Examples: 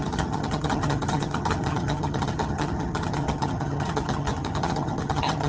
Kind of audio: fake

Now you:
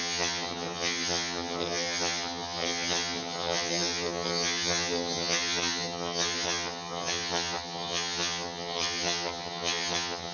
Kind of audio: fake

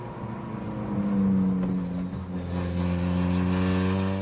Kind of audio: real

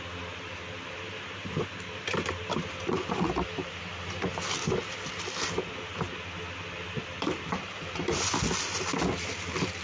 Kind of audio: real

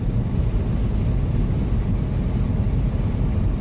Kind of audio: real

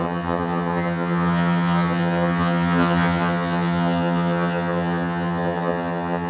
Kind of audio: fake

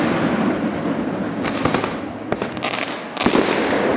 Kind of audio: real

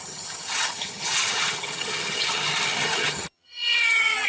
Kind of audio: fake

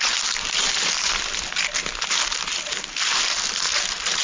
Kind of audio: real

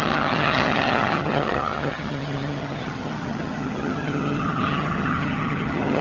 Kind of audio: fake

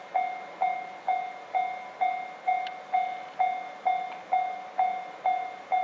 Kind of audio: real